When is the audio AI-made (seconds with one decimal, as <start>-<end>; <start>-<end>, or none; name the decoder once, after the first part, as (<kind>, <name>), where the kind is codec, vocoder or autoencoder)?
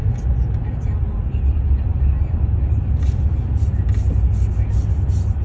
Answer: none